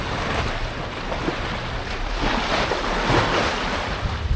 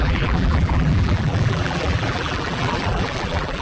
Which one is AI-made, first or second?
second